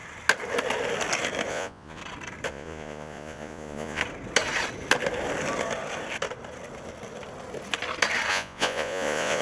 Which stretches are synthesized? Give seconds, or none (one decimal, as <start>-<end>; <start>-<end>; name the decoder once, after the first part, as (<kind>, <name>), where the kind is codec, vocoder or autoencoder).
1.5-2.0 (vocoder, Vocos); 2.5-4.0; 8.3-9.4